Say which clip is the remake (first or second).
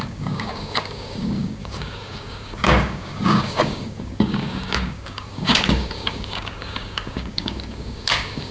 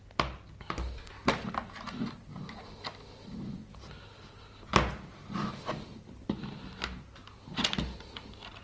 first